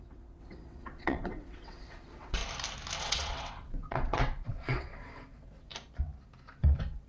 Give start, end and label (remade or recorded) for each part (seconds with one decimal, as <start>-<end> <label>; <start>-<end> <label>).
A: 0.0-2.4 remade; 2.4-3.0 recorded; 3.0-5.7 remade; 5.7-6.6 recorded; 6.6-7.1 remade